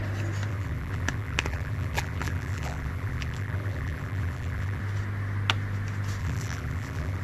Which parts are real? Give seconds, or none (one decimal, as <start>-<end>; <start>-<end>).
0.0-0.5; 4.8-6.2